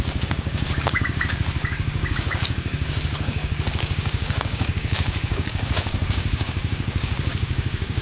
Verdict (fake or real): fake